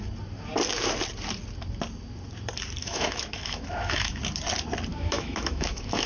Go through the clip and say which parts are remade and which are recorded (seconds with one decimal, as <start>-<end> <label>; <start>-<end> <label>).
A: 0.0-2.8 recorded; 2.8-4.2 remade; 4.2-4.9 recorded; 4.9-6.1 remade